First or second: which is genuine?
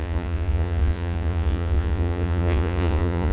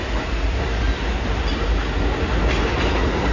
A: second